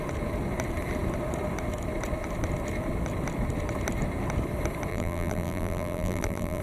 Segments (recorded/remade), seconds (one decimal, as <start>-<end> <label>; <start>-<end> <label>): 0.0-4.9 recorded; 4.9-6.6 remade